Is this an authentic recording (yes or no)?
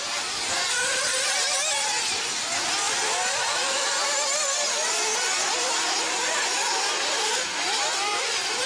yes